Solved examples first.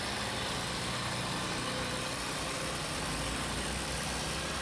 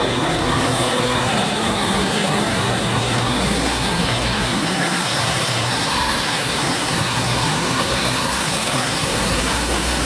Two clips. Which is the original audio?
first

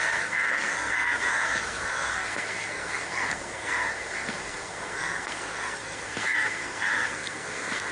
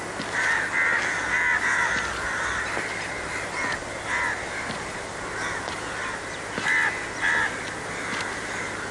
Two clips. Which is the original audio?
second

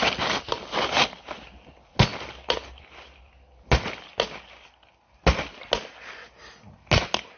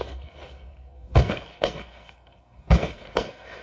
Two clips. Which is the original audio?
first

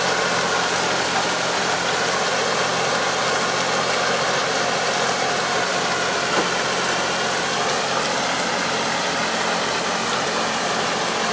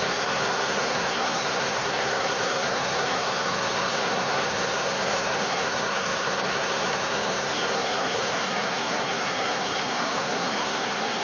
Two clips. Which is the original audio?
first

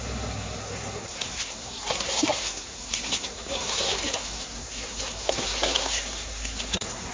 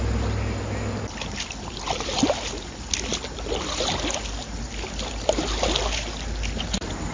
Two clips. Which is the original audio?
second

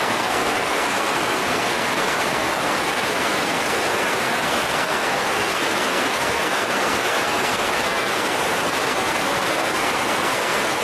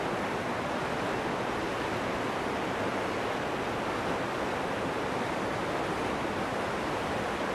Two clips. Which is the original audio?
second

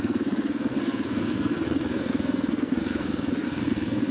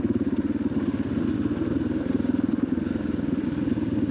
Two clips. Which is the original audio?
second